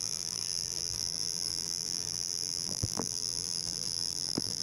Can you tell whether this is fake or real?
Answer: fake